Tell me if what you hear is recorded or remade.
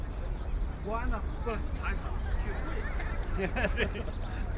recorded